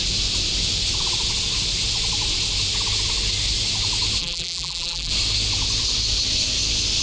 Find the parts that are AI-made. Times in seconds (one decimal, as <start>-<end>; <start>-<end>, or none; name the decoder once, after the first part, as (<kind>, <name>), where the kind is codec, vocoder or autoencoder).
4.2-5.1 (vocoder, BigVGAN v2)